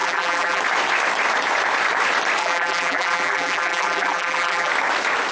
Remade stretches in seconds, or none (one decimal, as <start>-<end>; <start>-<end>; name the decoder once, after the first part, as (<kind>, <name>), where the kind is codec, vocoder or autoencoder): 0.0-0.6 (vocoder, BigVGAN v2); 2.4-4.7